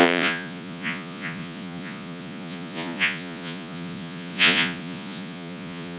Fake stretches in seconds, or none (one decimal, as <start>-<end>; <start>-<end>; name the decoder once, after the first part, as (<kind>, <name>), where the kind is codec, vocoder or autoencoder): 0.0-6.0 (vocoder, Vocos)